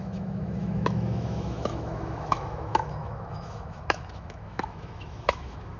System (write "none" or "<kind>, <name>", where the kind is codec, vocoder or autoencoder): autoencoder, DAC-VAE